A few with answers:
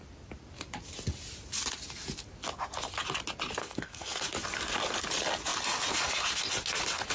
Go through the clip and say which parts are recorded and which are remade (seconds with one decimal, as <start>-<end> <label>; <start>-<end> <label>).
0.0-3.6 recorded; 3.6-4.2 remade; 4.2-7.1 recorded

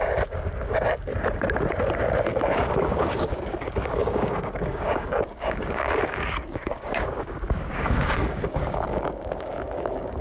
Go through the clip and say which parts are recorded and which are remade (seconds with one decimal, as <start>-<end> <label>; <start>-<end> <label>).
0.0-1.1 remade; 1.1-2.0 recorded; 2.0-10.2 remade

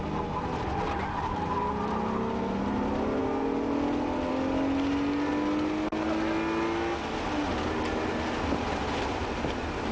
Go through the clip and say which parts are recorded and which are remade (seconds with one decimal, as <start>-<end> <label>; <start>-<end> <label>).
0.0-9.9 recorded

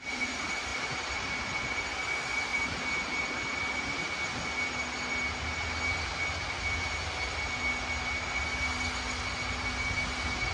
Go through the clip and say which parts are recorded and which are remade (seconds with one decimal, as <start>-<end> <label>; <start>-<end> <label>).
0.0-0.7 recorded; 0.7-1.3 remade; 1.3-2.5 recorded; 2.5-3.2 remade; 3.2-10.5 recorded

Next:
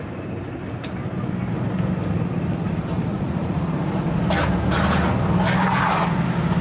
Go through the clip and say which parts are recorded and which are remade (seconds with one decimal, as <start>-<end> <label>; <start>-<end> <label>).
0.0-3.1 recorded; 3.1-3.6 remade; 3.6-6.6 recorded

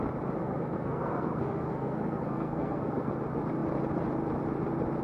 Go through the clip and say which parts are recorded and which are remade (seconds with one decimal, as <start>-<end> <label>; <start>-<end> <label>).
0.0-0.4 recorded; 0.4-3.1 remade; 3.1-5.0 recorded